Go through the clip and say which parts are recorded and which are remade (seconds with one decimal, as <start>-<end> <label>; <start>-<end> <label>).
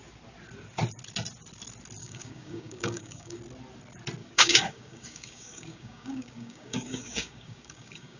0.0-2.0 recorded; 2.0-3.4 remade; 3.4-4.2 recorded; 4.2-8.2 remade